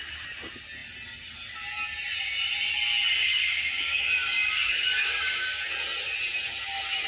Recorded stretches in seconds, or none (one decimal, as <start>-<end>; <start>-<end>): 0.0-3.2; 5.6-7.1